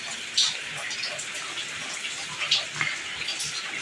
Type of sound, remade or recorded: recorded